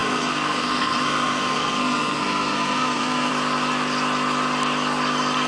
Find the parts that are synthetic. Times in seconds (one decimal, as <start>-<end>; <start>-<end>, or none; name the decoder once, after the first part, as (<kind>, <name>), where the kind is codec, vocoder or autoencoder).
0.0-3.3 (codec, SNAC)